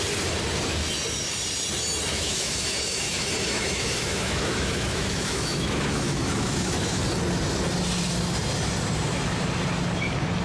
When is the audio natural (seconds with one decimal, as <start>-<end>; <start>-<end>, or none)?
0.0-2.1; 7.0-10.4